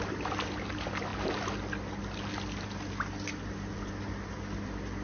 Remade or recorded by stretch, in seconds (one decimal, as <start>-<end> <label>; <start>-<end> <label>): 0.0-5.0 recorded